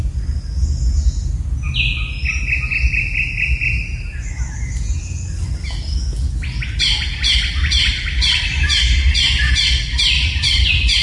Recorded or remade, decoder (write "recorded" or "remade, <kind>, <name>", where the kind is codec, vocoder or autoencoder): recorded